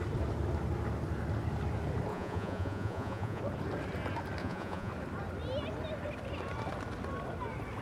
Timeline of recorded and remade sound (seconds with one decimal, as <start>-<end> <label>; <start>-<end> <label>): 0.0-2.1 recorded; 2.1-3.4 remade; 3.4-4.4 recorded; 4.4-4.9 remade; 4.9-7.8 recorded